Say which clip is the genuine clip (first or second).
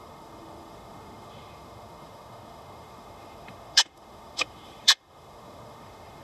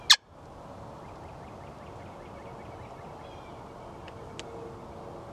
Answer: second